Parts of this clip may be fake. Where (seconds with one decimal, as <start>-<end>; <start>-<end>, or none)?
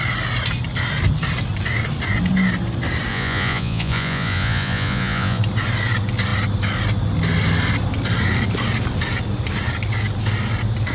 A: 3.1-5.4